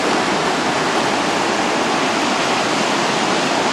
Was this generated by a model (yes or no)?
no